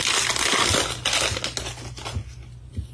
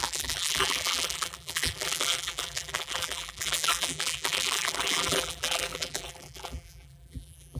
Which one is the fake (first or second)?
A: second